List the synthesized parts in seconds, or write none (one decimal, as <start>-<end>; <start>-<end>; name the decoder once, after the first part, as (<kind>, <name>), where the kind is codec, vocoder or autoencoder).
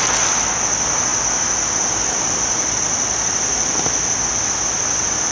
none